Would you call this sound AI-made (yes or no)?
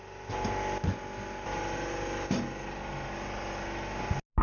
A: no